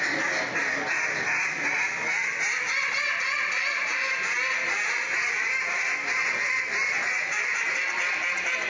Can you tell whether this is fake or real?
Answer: real